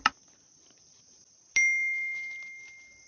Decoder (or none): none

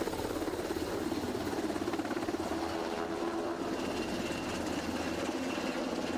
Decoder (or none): none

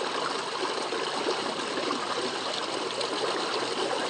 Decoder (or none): none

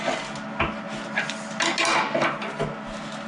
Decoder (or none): none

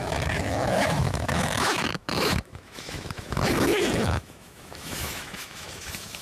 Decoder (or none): autoencoder, DAC-VAE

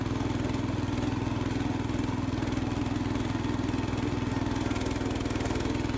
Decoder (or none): none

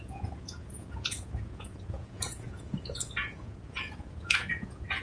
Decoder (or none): vocoder, Vocos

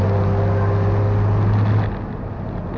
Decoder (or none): none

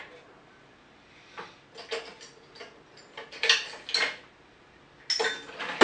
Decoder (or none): none